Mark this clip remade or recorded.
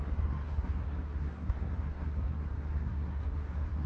remade